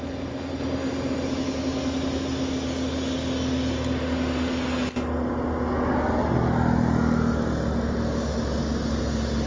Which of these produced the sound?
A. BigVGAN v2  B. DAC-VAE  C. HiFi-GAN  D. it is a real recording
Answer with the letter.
D